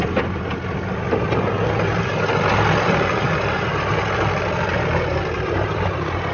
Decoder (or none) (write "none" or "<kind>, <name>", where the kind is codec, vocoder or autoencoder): none